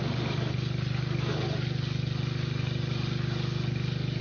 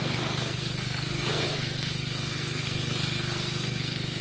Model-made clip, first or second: second